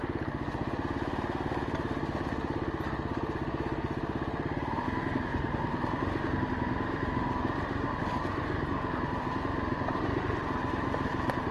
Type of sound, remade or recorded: recorded